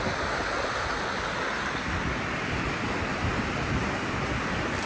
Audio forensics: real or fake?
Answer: real